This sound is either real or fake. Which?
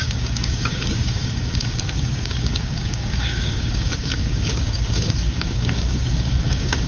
fake